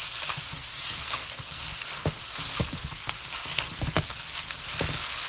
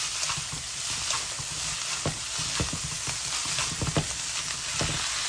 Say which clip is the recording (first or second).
second